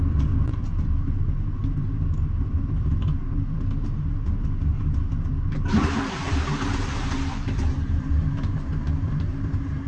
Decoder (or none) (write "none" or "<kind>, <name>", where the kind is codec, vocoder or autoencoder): vocoder, BigVGAN v2